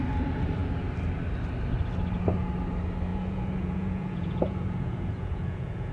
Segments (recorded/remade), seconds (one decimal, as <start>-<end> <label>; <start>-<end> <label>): 0.0-3.1 recorded; 3.1-5.9 remade